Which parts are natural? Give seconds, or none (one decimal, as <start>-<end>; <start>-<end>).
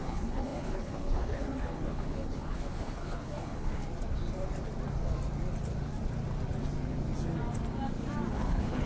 3.8-8.3